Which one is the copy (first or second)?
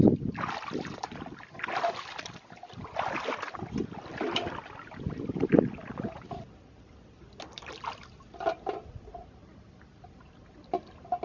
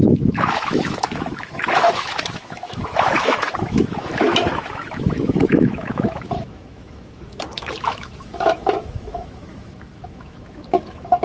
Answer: second